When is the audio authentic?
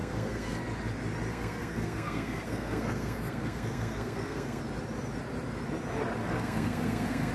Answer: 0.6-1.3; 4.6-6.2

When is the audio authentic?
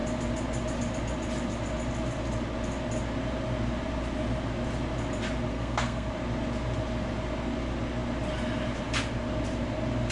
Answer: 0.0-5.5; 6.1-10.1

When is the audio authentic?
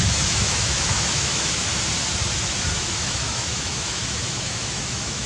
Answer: 1.7-2.7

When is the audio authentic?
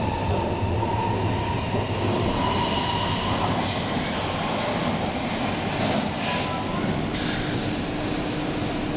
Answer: 0.0-9.0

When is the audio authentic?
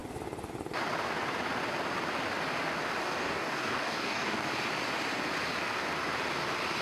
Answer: 0.0-3.0; 4.5-6.8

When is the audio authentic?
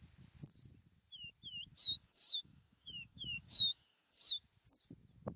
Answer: 0.0-1.7; 4.3-5.4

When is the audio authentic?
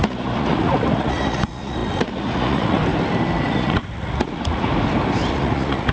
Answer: 2.8-3.4; 4.7-5.3